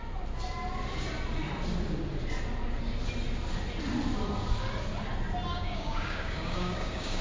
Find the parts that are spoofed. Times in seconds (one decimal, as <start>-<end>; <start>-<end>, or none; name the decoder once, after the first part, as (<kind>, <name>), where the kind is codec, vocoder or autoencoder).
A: 5.5-7.2 (codec, DAC)